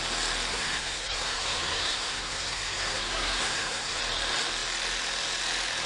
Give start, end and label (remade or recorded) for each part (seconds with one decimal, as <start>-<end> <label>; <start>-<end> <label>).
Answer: 0.0-0.5 recorded; 0.5-4.0 remade; 4.0-5.9 recorded